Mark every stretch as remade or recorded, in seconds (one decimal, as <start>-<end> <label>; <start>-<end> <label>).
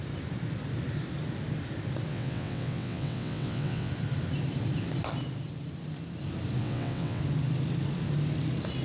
0.0-2.1 recorded; 2.1-3.9 remade; 3.9-6.6 recorded; 6.6-7.2 remade; 7.2-8.8 recorded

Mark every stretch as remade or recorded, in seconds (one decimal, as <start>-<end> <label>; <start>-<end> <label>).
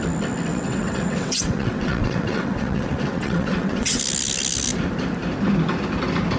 0.0-0.5 recorded; 0.5-4.0 remade; 4.0-6.4 recorded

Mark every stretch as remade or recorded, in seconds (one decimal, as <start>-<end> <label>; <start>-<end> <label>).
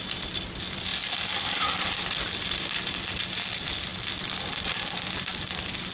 0.0-5.9 recorded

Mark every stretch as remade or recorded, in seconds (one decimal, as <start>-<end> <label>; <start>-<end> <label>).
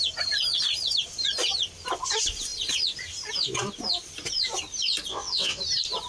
0.0-5.1 recorded; 5.1-5.6 remade; 5.6-6.1 recorded